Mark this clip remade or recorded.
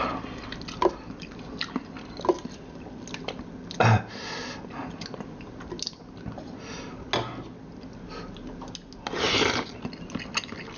recorded